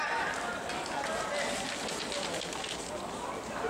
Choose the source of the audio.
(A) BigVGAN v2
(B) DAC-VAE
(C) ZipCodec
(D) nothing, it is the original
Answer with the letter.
D